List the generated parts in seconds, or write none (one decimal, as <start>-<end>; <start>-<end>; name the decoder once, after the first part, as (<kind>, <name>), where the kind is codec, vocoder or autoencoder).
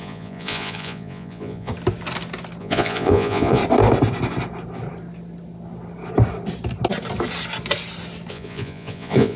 0.0-1.7 (vocoder, Vocos); 2.6-3.6; 8.3-9.4